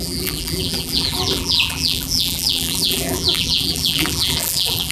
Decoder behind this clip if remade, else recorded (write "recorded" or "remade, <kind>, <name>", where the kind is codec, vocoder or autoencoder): remade, vocoder, BigVGAN v2